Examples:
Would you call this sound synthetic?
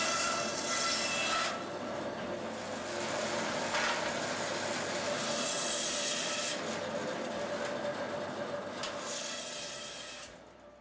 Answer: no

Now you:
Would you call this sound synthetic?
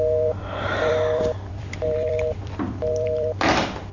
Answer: yes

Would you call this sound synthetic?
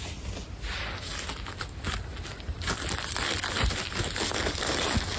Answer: no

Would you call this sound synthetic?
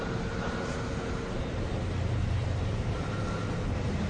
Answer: no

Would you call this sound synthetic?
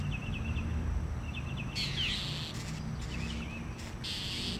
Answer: no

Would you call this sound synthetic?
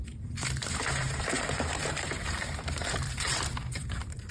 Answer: yes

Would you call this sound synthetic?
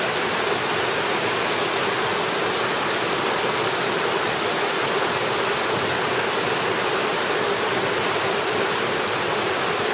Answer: no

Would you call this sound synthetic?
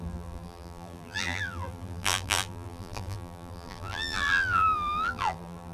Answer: yes